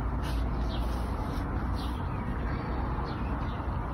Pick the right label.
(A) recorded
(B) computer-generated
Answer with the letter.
A